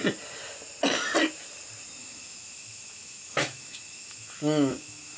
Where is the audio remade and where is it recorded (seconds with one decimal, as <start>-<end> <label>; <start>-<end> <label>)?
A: 0.0-2.0 recorded; 2.0-5.2 remade